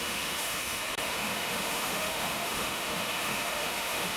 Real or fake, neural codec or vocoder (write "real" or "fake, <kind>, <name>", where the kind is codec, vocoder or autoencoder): fake, autoencoder, DAC-VAE